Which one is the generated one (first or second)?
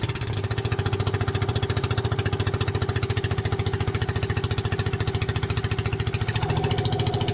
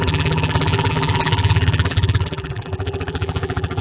second